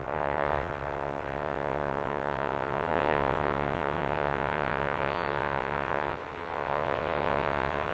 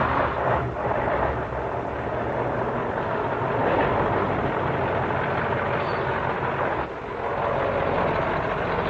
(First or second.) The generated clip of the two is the first